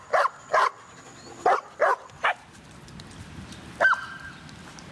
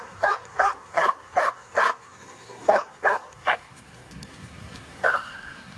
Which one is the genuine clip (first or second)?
first